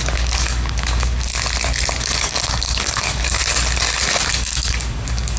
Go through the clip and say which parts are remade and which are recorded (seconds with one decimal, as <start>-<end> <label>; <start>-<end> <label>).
0.0-1.3 remade; 1.3-2.0 recorded; 2.0-3.4 remade; 3.4-4.3 recorded; 4.3-5.4 remade